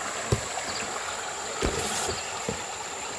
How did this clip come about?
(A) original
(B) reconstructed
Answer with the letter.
A